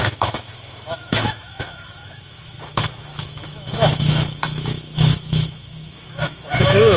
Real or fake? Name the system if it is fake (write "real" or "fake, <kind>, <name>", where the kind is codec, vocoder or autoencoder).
fake, autoencoder, DAC-VAE